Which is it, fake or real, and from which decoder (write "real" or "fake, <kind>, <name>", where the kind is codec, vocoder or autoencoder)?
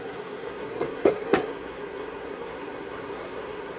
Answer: fake, codec, SNAC